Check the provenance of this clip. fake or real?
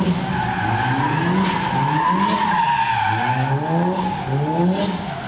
real